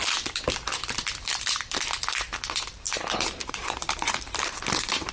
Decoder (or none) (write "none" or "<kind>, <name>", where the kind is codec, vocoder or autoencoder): vocoder, BigVGAN v2